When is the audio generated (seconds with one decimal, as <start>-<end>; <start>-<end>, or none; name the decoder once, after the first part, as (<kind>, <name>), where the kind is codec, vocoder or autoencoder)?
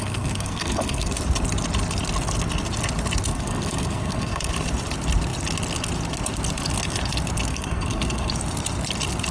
0.0-1.1 (codec, SNAC); 3.3-4.5; 7.5-8.3